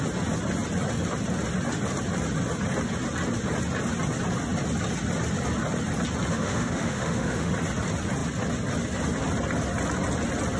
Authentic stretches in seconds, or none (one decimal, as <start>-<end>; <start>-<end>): 0.0-6.3; 7.5-10.6